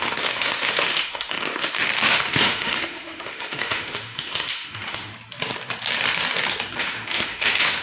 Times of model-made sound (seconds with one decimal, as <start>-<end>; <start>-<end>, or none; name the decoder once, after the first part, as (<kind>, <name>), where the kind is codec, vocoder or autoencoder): 0.0-5.1 (autoencoder, DAC-VAE); 6.8-7.8